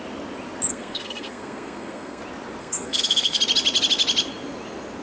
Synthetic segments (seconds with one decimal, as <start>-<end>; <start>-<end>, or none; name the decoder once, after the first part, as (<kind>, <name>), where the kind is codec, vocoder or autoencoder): 0.7-2.2 (codec, SNAC); 2.6-3.4

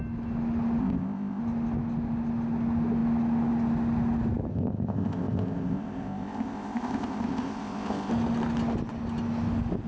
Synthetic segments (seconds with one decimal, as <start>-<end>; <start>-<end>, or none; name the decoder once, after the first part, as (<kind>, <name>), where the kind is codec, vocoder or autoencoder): 0.8-1.4 (codec, ZipCodec); 4.5-8.1

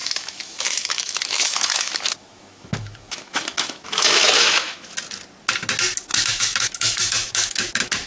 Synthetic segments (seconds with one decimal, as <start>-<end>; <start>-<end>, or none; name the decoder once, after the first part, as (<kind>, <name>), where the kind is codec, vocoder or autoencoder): 0.0-4.9 (autoencoder, DAC-VAE); 6.1-8.1

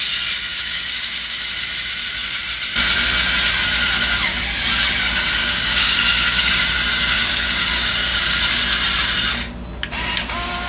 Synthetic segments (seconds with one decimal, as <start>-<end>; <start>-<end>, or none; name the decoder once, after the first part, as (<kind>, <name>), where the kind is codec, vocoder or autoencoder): 0.5-1.5 (codec, DAC); 5.4-6.5; 6.9-8.2

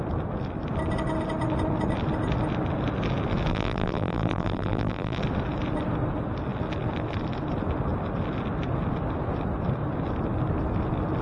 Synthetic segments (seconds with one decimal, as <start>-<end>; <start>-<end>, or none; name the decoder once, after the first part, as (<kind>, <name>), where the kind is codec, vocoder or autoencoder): 3.5-5.2 (vocoder, BigVGAN v2)